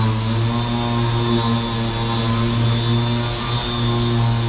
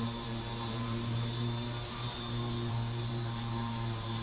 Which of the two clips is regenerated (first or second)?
second